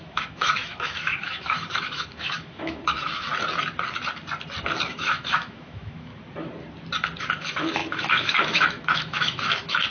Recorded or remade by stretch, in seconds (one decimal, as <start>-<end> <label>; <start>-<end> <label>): 0.0-3.3 remade; 3.3-4.9 recorded; 4.9-6.1 remade; 6.1-7.2 recorded; 7.2-9.9 remade